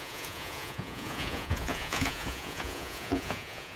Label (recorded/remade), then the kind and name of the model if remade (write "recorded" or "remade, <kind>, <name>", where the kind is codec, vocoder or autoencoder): remade, vocoder, Vocos